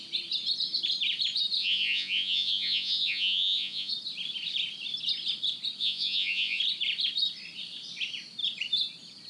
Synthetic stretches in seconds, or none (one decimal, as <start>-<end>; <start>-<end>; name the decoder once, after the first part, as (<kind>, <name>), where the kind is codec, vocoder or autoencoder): 1.6-3.9 (vocoder, Vocos); 5.8-6.6